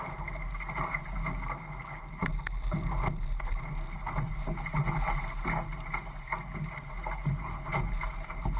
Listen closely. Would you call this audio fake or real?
real